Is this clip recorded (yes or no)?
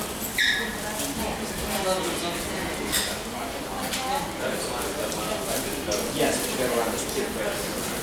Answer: yes